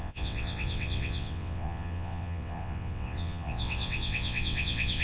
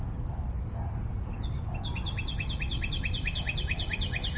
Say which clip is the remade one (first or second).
first